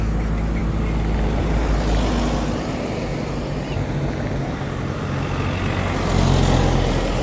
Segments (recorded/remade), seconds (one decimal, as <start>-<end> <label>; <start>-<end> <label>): 0.0-7.2 recorded